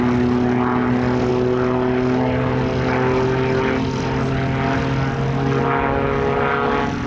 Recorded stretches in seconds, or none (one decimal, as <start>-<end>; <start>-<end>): 0.0-7.1